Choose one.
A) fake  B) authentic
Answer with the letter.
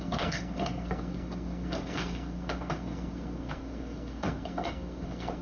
A